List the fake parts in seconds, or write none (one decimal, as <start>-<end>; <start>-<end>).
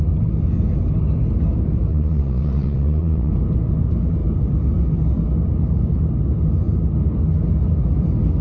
1.9-3.3